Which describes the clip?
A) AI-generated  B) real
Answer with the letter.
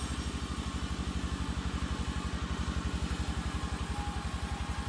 B